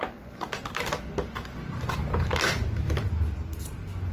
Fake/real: real